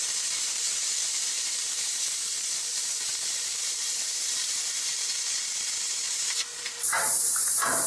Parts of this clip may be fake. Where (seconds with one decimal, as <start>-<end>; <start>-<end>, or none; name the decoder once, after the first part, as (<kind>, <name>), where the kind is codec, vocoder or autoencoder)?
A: 0.0-4.9 (vocoder, BigVGAN v2); 6.1-7.9